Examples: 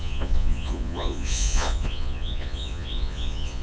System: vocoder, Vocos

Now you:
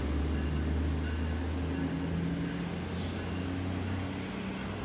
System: none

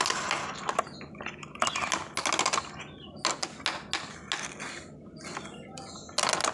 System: none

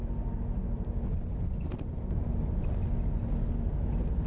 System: none